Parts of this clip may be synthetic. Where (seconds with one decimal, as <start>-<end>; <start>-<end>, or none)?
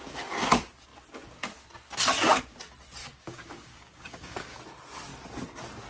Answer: 3.0-4.6